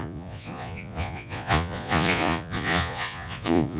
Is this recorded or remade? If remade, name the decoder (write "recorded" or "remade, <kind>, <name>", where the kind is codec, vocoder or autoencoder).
remade, vocoder, Vocos